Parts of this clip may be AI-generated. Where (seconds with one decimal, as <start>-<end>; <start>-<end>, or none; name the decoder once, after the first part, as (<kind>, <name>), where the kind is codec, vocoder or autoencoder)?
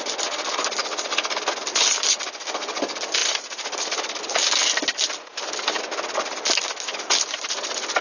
3.2-4.2 (vocoder, BigVGAN v2)